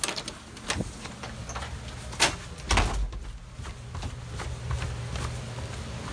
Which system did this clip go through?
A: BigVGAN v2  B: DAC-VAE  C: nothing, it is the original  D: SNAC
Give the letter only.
C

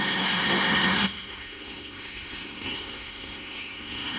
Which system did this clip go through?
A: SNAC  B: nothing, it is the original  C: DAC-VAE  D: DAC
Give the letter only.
A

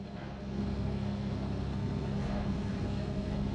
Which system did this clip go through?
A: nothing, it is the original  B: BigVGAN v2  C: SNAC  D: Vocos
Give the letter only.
C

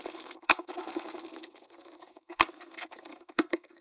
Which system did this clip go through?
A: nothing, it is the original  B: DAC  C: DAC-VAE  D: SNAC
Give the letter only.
D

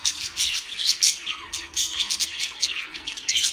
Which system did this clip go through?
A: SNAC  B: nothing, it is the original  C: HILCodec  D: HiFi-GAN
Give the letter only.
A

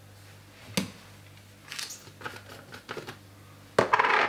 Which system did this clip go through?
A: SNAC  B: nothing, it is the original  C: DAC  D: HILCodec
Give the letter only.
B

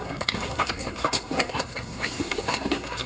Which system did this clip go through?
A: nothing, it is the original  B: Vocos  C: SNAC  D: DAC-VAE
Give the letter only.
C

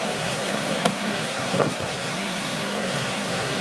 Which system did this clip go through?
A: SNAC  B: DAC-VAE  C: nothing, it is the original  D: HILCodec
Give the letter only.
A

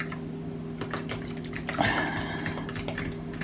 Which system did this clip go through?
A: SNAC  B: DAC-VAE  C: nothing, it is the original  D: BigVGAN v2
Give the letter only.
C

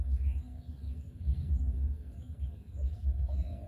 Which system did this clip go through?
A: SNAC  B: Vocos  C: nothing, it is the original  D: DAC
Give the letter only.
A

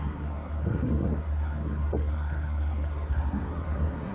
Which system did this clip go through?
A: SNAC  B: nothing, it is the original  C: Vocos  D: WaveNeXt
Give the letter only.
A